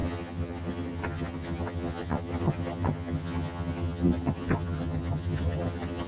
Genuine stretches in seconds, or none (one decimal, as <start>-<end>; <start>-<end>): none